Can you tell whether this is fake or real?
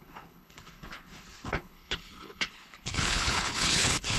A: fake